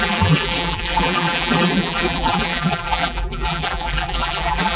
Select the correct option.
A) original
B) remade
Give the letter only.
B